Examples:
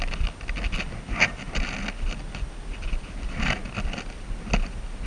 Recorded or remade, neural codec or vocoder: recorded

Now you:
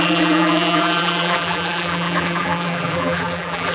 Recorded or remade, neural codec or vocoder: remade, vocoder, BigVGAN v2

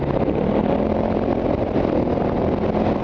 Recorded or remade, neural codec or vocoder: remade, vocoder, BigVGAN v2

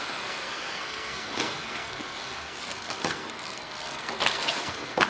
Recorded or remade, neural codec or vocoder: remade, codec, SNAC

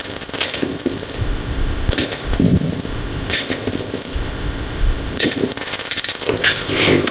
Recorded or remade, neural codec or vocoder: remade, codec, ZipCodec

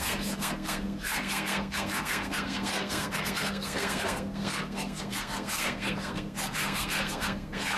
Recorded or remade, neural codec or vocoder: remade, codec, SNAC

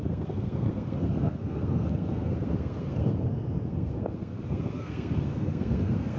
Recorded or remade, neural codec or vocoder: remade, codec, SNAC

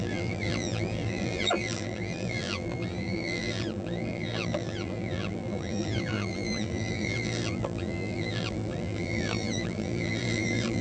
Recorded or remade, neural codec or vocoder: remade, vocoder, BigVGAN v2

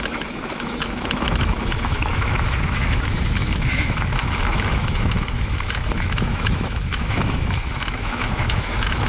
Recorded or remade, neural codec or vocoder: remade, autoencoder, DAC-VAE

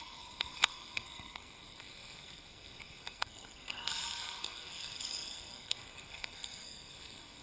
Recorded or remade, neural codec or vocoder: remade, codec, SNAC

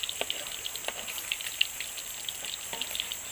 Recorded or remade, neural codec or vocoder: recorded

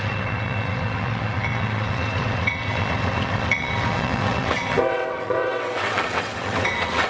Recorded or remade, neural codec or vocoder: remade, vocoder, WaveNeXt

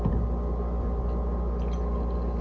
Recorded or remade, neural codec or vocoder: recorded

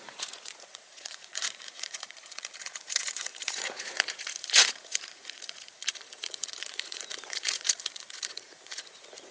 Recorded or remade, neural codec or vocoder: remade, vocoder, Vocos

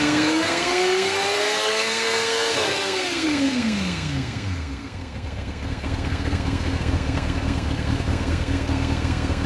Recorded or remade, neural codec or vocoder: remade, codec, SNAC